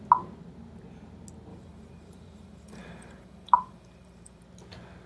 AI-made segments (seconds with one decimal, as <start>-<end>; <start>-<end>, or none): 1.5-4.4